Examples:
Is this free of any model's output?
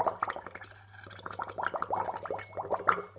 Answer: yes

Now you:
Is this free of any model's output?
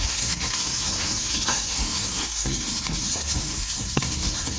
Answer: no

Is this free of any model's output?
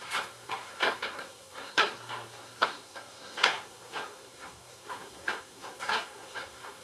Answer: no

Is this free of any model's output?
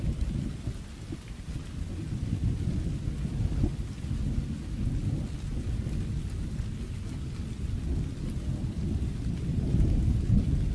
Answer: yes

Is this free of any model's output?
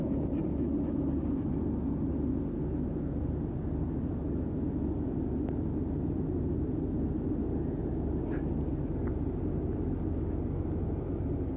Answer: yes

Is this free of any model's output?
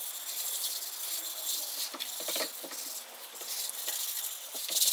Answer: yes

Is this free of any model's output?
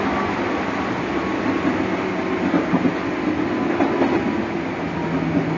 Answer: yes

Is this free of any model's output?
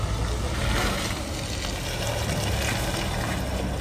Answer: yes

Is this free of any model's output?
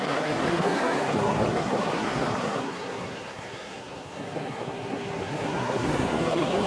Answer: no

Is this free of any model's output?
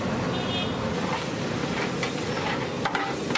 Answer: yes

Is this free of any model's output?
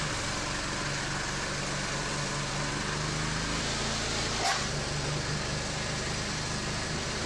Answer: yes